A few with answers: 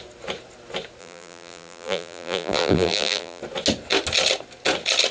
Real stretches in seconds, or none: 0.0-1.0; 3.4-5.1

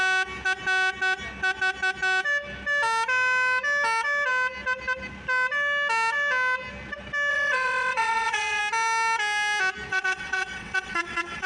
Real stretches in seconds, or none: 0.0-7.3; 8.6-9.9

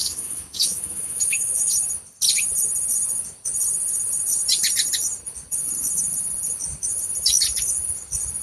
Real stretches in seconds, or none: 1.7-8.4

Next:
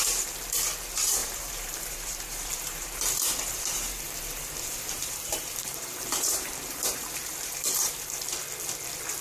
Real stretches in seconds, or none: 0.0-1.2; 3.0-3.5; 8.2-9.2

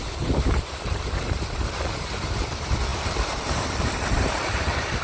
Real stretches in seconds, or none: none